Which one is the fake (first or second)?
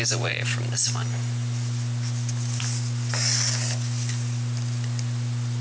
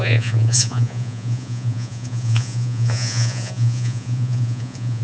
second